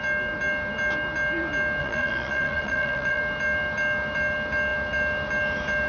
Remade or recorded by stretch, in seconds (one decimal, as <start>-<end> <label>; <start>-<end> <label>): 0.0-1.8 recorded; 1.8-3.2 remade; 3.2-5.9 recorded